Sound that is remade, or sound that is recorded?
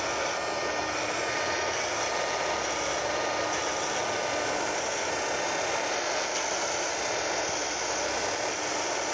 recorded